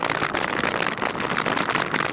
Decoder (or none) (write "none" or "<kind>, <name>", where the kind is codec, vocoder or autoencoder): none